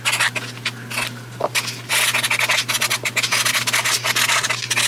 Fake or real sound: real